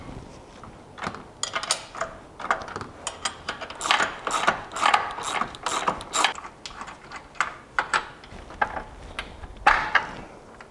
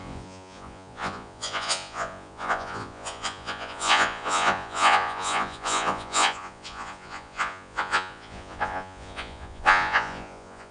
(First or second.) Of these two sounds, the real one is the first